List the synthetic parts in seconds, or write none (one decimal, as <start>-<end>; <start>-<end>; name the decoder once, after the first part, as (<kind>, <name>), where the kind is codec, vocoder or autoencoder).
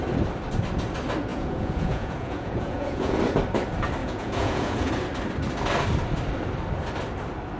1.3-3.2 (vocoder, Vocos); 4.0-4.9